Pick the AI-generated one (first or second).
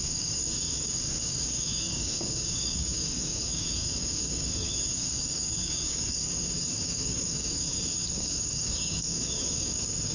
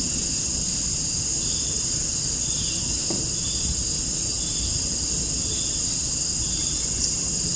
first